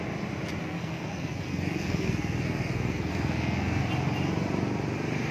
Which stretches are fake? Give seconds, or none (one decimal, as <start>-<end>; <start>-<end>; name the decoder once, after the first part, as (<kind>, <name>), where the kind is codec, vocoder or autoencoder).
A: 0.6-3.8 (codec, SNAC)